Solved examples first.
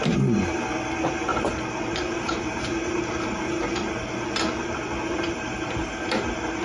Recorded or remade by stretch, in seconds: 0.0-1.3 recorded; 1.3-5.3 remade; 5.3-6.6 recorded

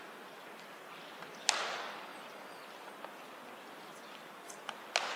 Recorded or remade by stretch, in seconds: 0.0-5.2 recorded

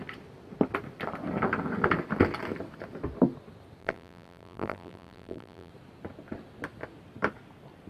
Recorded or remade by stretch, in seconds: 0.0-3.8 recorded; 3.8-5.7 remade; 5.7-7.9 recorded

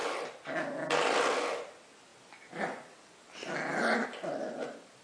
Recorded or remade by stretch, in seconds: 0.0-0.8 recorded; 0.8-2.1 remade; 2.1-3.8 recorded; 3.8-5.0 remade

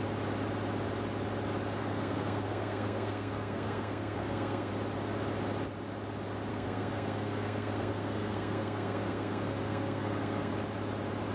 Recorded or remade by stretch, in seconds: 0.0-1.8 recorded; 1.8-4.7 remade; 4.7-6.5 recorded; 6.5-10.5 remade; 10.5-11.3 recorded

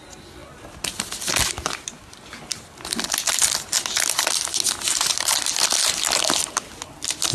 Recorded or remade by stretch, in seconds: 0.0-7.3 recorded